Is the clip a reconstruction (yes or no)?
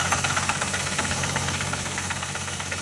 yes